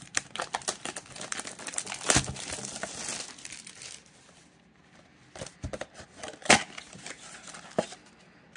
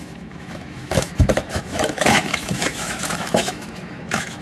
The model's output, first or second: second